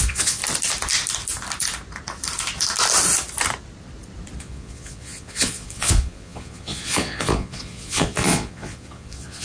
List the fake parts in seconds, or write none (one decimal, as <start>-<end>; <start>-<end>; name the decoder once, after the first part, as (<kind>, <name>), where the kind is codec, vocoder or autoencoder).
0.0-0.4 (vocoder, Vocos); 4.4-9.4